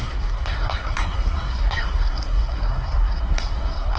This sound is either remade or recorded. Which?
remade